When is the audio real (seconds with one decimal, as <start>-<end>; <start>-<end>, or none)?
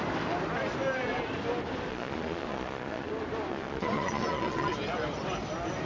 0.0-1.9; 3.1-3.5; 4.7-5.9